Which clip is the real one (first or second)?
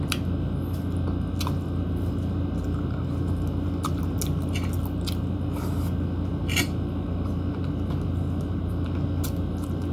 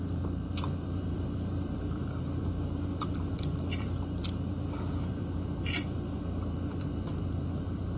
first